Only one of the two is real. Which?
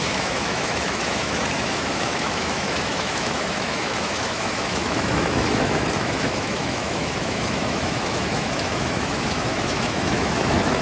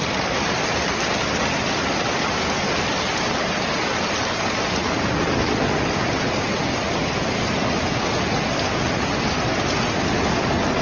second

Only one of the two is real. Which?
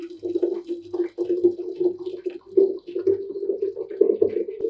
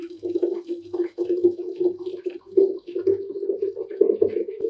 first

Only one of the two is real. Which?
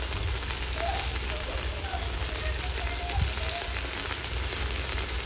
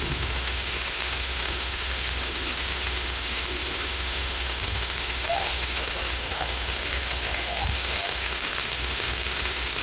first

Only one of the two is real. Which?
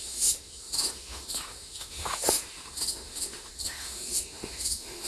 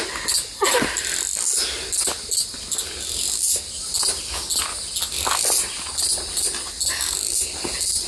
second